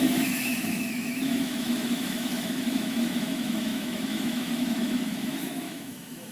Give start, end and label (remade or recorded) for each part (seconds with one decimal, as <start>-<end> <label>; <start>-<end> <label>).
0.0-6.3 remade